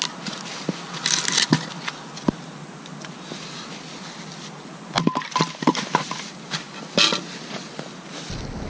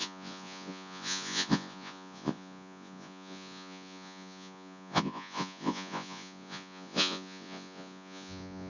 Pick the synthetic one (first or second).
second